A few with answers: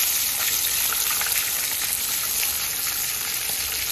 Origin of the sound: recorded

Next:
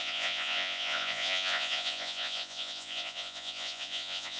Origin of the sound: remade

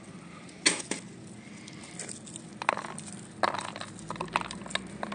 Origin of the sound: recorded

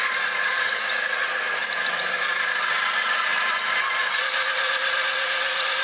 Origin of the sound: recorded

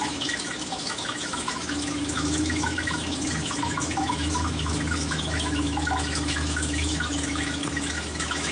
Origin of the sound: remade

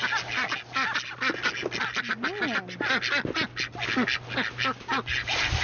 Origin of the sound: recorded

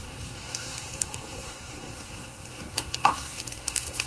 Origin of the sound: remade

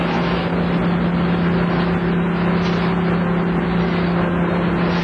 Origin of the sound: recorded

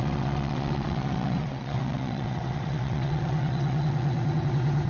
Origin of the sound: remade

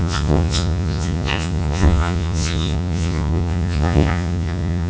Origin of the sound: remade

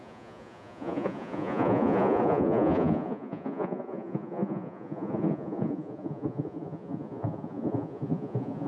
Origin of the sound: remade